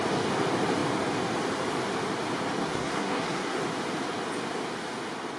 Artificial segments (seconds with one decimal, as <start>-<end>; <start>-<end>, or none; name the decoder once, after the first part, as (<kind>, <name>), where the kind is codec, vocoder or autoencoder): 2.6-3.6 (codec, SNAC)

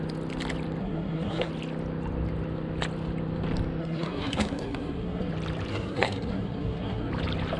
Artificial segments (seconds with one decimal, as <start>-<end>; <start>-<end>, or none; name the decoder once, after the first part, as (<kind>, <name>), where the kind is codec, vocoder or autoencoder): 0.8-1.5 (codec, SNAC); 3.8-5.3; 5.7-7.1

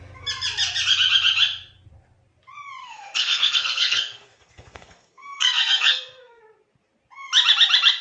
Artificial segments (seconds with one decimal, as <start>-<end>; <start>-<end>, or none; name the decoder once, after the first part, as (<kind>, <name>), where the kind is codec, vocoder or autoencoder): 2.8-6.4 (codec, SNAC)

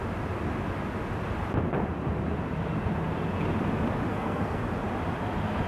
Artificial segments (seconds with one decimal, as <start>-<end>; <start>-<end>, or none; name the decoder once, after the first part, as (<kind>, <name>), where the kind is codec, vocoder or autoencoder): 4.1-4.6 (codec, SNAC)

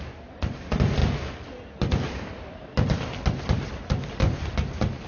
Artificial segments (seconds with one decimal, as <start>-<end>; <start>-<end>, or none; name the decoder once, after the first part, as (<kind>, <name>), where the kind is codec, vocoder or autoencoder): none